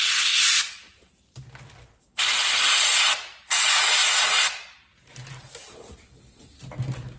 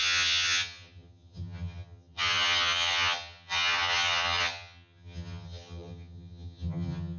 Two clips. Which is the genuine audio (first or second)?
first